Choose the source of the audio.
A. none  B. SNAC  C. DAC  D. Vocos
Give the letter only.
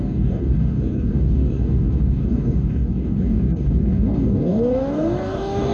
C